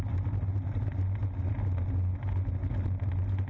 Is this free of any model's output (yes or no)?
yes